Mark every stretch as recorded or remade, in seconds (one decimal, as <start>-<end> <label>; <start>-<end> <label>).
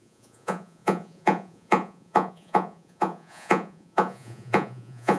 0.0-5.2 remade